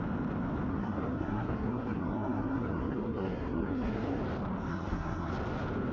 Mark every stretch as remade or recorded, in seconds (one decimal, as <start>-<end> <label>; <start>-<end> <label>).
0.0-0.7 recorded; 0.7-4.2 remade; 4.2-4.7 recorded; 4.7-5.3 remade; 5.3-5.9 recorded